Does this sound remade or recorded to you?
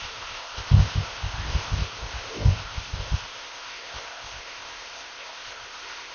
remade